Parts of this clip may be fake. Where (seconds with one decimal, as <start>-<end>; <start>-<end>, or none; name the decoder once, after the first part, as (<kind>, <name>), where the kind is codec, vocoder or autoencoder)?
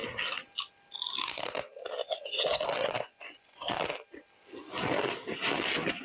2.0-3.7 (vocoder, Vocos)